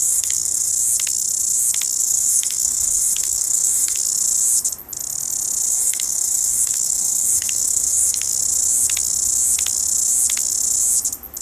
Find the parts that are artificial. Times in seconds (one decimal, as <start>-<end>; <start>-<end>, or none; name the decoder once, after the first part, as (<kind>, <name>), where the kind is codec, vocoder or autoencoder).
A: 0.0-0.7 (codec, SNAC); 2.0-4.0; 5.7-8.3